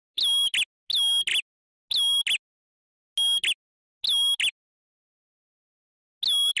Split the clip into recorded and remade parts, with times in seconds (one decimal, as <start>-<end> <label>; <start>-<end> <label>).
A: 0.0-6.6 recorded